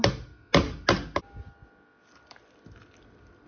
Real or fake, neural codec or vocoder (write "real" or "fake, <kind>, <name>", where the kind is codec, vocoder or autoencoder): real